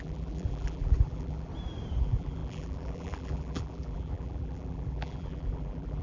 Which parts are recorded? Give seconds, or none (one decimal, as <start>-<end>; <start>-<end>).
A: 1.5-2.0